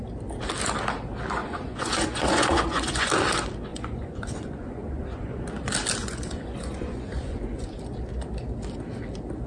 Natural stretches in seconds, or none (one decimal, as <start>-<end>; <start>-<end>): 0.0-1.4; 3.1-3.7; 5.4-6.0; 7.8-9.5

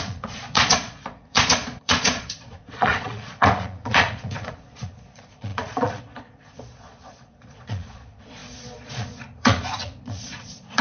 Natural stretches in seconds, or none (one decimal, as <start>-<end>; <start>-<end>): none

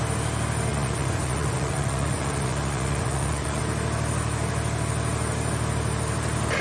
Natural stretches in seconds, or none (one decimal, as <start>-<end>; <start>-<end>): 0.0-0.7; 3.6-6.6

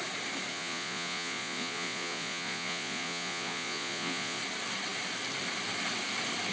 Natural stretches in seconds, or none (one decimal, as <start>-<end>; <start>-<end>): 0.0-0.5; 4.4-6.5

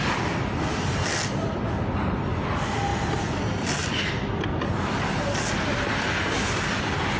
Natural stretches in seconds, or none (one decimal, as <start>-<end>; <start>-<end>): 0.0-7.2

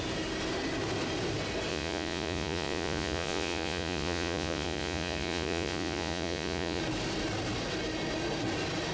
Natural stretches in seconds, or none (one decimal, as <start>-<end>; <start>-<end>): 0.0-1.7; 6.8-8.9

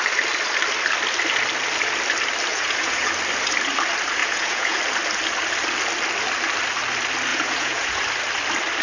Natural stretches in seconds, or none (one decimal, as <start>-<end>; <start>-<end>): 0.0-2.5; 3.1-4.2; 4.8-7.3; 8.0-8.8

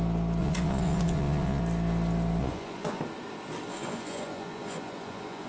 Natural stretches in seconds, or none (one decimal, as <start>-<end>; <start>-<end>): 0.0-0.4; 1.6-2.4; 3.0-3.7